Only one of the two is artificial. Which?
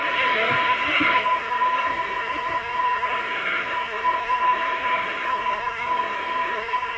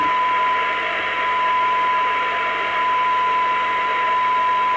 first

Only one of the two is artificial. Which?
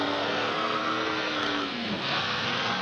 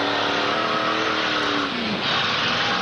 first